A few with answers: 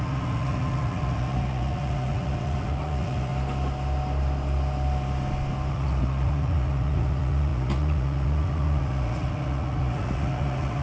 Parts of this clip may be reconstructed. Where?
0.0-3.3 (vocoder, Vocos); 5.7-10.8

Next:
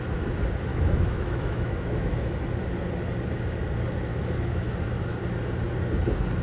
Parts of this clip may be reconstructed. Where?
0.7-2.3 (autoencoder, DAC-VAE); 4.1-4.7

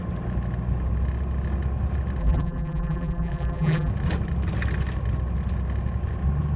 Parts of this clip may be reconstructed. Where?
2.2-3.9 (vocoder, BigVGAN v2)

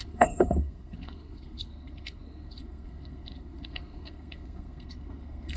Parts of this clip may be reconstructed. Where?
0.0-5.6 (codec, SNAC)

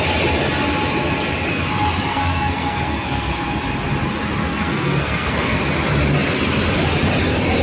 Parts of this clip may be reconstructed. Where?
2.1-3.3 (codec, SNAC); 4.5-5.6

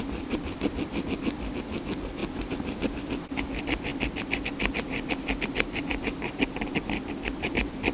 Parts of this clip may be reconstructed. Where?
none

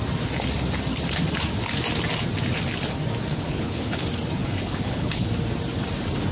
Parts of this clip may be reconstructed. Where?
3.3-4.0 (codec, HILCodec); 4.4-5.3

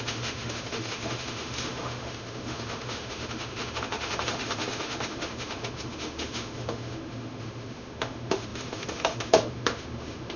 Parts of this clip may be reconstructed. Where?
0.0-10.4 (autoencoder, DAC-VAE)